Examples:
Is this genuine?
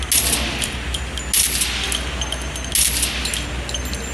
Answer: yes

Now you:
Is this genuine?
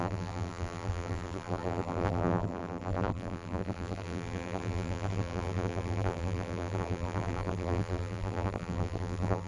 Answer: no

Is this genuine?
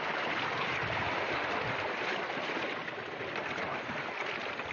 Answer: no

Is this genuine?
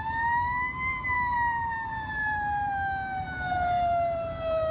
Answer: no